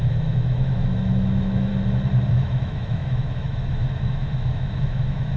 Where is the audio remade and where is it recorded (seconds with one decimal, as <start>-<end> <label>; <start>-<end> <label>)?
0.0-1.7 remade; 1.7-2.3 recorded; 2.3-5.4 remade